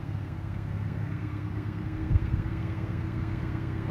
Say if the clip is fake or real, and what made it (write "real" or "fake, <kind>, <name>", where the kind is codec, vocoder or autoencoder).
fake, codec, SNAC